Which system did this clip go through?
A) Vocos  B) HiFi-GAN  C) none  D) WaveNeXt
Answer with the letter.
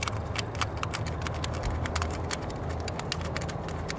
C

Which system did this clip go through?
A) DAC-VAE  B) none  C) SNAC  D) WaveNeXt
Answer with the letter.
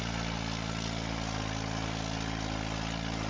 B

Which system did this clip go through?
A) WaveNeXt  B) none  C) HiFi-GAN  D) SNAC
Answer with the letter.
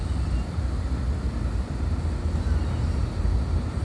B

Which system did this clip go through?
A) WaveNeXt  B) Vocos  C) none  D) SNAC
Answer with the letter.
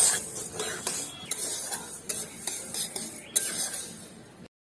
C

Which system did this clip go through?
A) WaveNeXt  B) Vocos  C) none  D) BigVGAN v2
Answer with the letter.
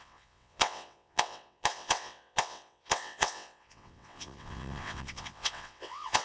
A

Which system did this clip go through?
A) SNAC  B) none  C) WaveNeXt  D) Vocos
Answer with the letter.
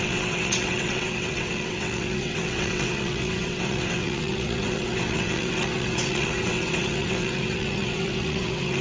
C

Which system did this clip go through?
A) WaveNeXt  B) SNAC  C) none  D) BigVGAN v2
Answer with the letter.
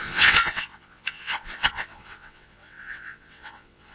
A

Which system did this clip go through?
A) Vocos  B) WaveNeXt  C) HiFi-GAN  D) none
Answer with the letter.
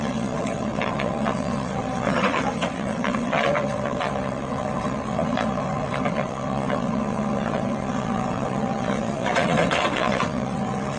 B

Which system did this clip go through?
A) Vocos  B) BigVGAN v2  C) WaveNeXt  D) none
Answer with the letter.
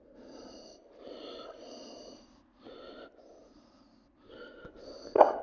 D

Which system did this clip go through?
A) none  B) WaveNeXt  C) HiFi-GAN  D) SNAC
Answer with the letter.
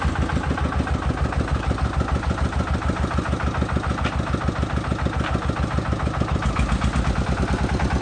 A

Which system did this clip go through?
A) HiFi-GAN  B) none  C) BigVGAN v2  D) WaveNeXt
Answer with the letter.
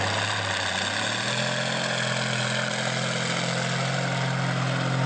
B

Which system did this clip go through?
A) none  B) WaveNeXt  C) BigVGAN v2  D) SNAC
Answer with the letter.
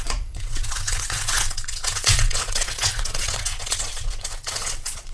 B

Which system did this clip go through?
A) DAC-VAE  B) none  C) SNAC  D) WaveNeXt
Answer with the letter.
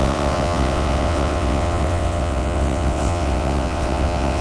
D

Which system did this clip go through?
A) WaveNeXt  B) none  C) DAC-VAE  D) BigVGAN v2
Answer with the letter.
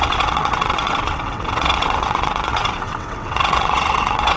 A